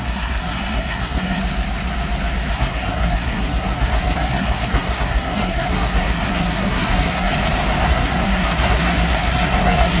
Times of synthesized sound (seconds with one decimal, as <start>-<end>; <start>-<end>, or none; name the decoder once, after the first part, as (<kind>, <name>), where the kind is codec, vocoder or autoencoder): 0.0-1.4 (codec, SNAC); 2.5-7.3; 7.8-10.0